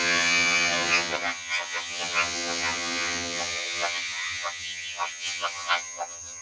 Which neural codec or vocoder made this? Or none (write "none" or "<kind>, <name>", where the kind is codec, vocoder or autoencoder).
vocoder, HiFi-GAN